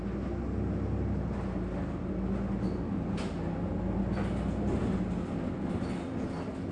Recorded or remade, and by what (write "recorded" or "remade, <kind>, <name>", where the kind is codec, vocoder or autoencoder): recorded